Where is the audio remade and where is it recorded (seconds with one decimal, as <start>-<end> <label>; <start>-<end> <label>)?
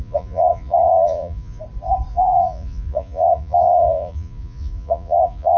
0.0-1.6 remade; 1.6-2.1 recorded; 2.1-5.6 remade